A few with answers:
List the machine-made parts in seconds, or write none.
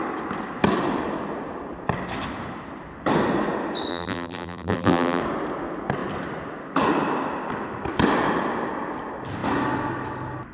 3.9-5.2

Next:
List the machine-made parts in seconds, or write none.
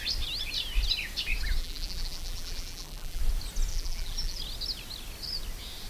1.6-3.2; 3.7-4.4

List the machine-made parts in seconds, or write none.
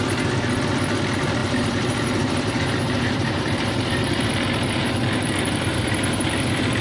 1.4-4.3; 4.8-5.7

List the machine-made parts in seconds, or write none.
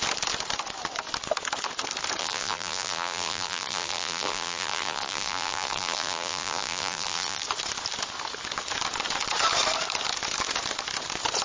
2.2-7.4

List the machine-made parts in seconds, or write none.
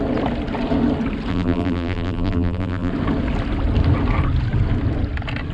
1.3-2.9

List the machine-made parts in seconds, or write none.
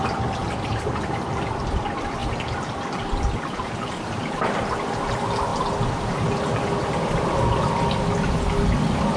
none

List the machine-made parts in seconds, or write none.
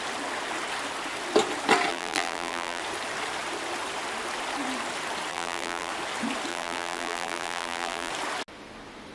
1.9-2.8; 5.3-5.9; 6.5-8.1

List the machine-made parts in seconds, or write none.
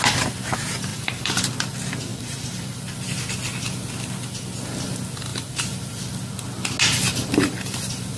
0.9-1.5; 2.1-2.8; 5.3-6.0; 7.1-8.2